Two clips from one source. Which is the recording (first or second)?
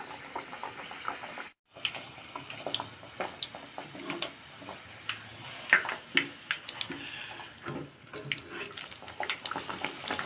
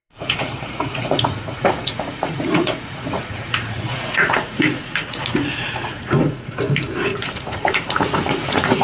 first